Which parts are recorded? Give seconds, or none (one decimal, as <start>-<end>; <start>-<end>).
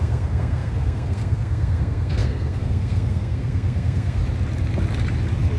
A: 4.2-5.6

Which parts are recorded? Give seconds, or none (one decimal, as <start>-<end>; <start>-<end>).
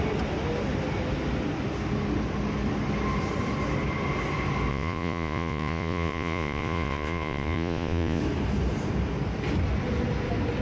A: 0.0-4.7; 8.2-10.6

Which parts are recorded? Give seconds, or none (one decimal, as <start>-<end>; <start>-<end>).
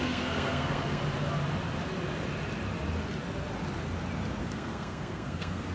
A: 1.0-4.4